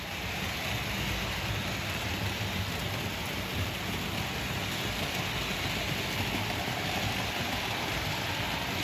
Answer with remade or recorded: recorded